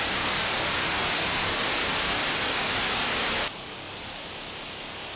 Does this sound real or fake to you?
real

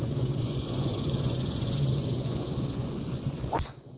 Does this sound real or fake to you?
fake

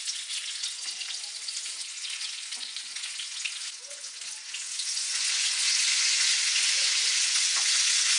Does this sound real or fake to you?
fake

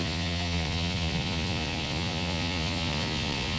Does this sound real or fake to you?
fake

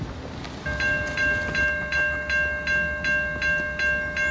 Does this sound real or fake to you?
real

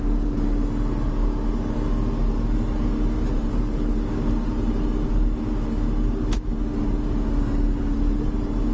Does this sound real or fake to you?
real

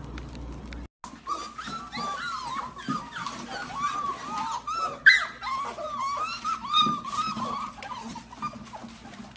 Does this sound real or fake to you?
real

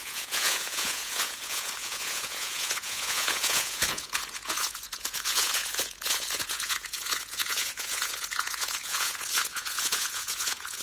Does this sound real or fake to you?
fake